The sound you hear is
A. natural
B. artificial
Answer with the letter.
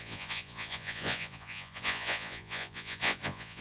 B